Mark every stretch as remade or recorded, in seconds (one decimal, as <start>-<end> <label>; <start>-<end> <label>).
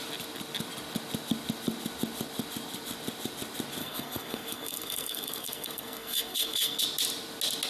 0.0-3.8 recorded; 3.8-6.8 remade; 6.8-7.7 recorded